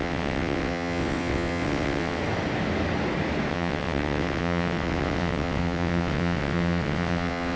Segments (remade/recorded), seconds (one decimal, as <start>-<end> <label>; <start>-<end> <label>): 0.0-2.2 remade; 2.2-3.5 recorded; 3.5-7.6 remade